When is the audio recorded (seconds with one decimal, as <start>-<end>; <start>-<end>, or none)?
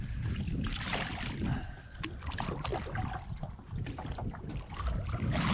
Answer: 2.7-5.5